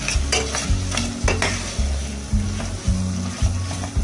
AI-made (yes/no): no